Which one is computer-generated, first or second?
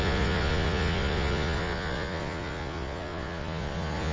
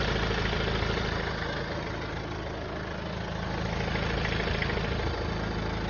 first